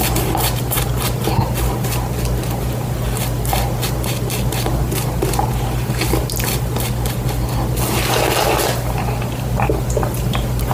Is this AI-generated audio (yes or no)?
no